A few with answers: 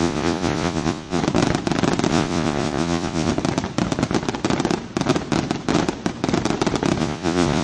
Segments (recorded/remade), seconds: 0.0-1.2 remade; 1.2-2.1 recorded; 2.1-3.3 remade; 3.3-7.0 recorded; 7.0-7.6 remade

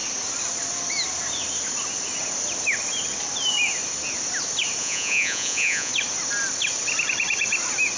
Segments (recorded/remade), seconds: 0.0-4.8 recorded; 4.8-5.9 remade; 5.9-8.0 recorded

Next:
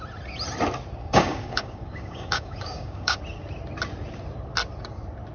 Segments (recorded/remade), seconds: 0.0-1.0 recorded; 1.0-3.2 remade; 3.2-5.3 recorded

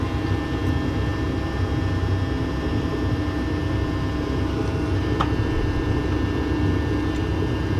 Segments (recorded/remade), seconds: 0.0-7.8 recorded